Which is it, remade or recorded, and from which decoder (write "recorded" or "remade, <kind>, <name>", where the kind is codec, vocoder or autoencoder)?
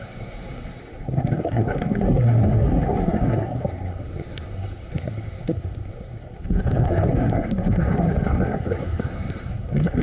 remade, codec, SNAC